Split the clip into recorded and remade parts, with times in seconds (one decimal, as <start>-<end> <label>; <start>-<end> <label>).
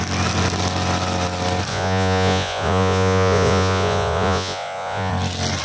0.0-1.7 recorded; 1.7-5.1 remade; 5.1-5.6 recorded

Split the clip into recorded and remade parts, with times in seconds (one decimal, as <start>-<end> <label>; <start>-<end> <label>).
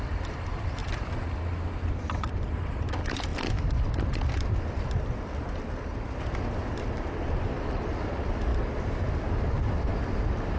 0.0-0.8 remade; 0.8-2.1 recorded; 2.1-8.5 remade; 8.5-9.3 recorded; 9.3-9.9 remade; 9.9-10.6 recorded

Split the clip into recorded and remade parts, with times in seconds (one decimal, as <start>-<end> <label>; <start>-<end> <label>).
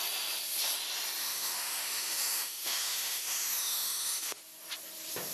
0.0-1.2 recorded; 1.2-4.4 remade; 4.4-5.3 recorded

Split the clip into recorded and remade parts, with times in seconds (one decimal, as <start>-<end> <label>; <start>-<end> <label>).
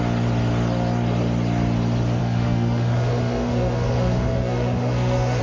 0.0-2.2 recorded; 2.2-5.4 remade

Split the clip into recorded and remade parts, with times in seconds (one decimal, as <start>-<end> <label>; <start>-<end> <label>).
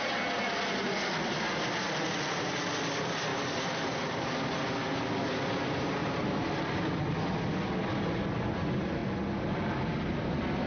0.0-3.3 recorded; 3.3-4.3 remade; 4.3-6.0 recorded; 6.0-6.9 remade; 6.9-10.7 recorded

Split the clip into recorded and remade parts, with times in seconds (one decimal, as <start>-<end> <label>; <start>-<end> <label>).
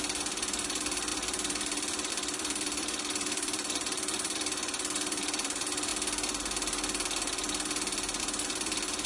0.0-5.9 remade; 5.9-8.2 recorded; 8.2-9.1 remade